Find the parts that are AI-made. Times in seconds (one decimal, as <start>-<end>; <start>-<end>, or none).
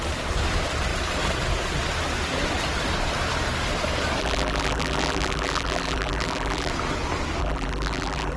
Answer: 4.2-6.7; 7.4-8.4